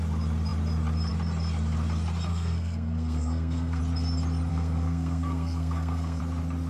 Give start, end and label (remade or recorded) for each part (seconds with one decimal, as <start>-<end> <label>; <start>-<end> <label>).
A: 0.0-2.3 recorded; 2.3-3.8 remade; 3.8-4.5 recorded; 4.5-6.2 remade; 6.2-6.7 recorded